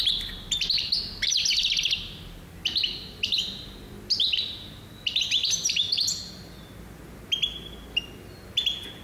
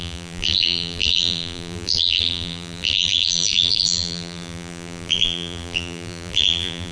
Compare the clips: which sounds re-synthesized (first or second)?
second